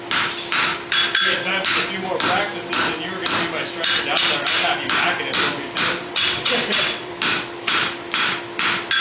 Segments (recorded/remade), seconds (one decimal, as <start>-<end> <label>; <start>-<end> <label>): 0.0-6.0 recorded; 6.0-7.1 remade; 7.1-9.0 recorded